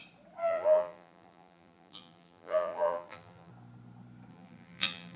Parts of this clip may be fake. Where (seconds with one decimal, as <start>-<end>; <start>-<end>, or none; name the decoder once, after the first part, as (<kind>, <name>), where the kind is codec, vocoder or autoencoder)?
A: 0.4-3.5 (vocoder, BigVGAN v2); 4.3-5.2